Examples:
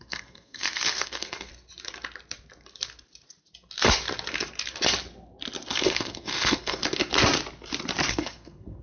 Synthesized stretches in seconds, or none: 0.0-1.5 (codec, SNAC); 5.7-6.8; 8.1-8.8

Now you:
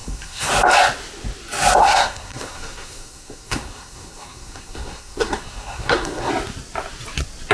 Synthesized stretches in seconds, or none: 0.0-0.5 (codec, SNAC); 1.8-6.3

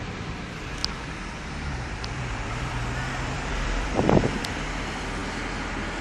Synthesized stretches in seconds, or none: 0.8-4.4 (vocoder, BigVGAN v2)

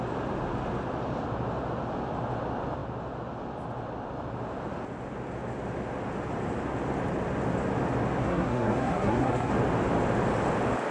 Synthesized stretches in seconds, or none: 8.2-9.5 (codec, SNAC)

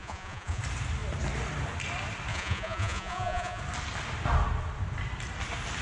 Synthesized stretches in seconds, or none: 0.0-0.6 (vocoder, Vocos); 2.3-3.6

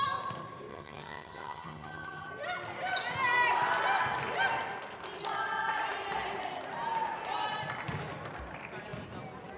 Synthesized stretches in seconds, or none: 0.7-2.3 (vocoder, HiFi-GAN)